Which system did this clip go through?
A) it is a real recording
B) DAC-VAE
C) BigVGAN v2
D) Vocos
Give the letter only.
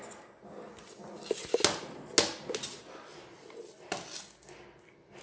A